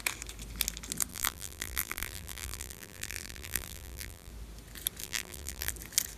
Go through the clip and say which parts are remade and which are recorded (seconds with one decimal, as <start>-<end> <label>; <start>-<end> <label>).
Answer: 0.0-1.1 recorded; 1.1-4.3 remade; 4.3-5.0 recorded; 5.0-5.7 remade; 5.7-6.2 recorded